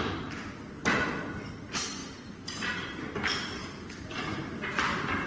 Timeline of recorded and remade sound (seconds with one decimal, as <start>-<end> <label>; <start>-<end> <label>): 0.0-5.3 recorded